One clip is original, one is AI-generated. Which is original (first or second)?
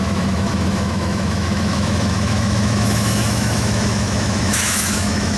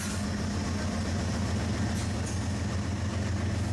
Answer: second